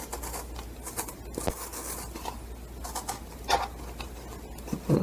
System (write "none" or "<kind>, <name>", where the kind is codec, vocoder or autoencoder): none